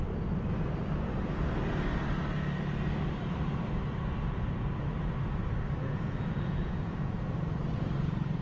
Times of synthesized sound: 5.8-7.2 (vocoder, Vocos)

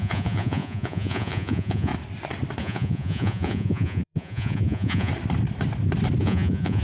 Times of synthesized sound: 0.0-1.9 (vocoder, Vocos); 2.6-5.1; 6.2-6.8

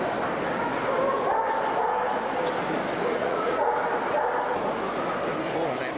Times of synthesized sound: 3.2-3.7 (vocoder, Vocos)

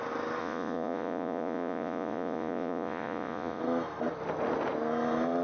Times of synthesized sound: 0.4-3.6 (vocoder, Vocos)